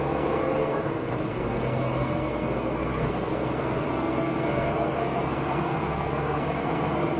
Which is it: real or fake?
fake